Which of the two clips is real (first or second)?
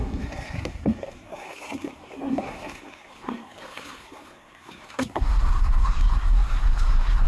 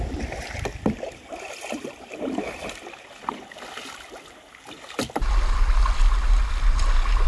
second